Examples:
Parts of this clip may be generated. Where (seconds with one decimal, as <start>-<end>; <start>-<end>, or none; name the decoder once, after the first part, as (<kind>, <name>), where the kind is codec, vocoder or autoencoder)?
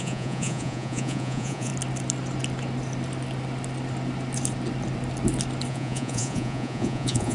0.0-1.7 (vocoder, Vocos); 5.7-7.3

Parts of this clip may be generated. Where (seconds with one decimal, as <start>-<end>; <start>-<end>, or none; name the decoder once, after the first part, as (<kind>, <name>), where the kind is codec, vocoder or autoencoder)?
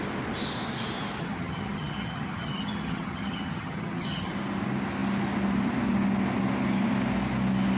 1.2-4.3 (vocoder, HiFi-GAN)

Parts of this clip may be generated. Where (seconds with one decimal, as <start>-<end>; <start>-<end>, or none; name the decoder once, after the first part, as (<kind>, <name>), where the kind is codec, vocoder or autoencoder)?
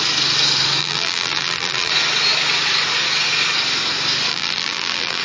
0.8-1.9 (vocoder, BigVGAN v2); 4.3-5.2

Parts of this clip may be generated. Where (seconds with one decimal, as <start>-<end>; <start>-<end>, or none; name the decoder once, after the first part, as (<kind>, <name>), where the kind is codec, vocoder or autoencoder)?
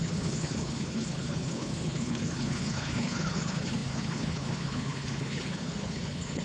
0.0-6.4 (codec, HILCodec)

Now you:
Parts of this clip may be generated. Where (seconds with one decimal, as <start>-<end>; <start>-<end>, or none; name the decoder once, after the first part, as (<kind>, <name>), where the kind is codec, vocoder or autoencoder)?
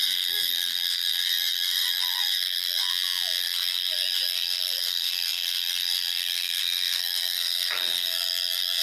0.0-2.9 (codec, SNAC); 3.4-8.8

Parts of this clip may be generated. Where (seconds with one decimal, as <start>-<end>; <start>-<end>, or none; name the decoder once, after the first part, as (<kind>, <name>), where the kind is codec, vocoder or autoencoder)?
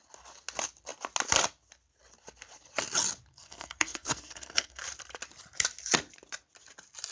3.3-4.8 (codec, SNAC)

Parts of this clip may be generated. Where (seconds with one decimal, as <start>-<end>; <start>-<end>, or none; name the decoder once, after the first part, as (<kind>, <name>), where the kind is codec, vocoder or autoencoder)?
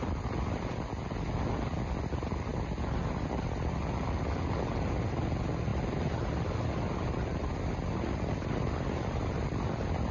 none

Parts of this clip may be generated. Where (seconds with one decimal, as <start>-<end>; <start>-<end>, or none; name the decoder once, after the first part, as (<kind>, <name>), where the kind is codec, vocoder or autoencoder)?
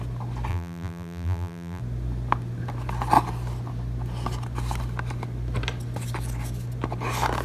0.5-1.8 (vocoder, BigVGAN v2)